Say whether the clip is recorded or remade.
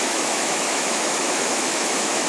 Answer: remade